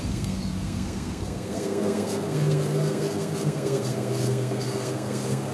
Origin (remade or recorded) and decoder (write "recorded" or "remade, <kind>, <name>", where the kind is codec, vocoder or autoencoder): remade, codec, SNAC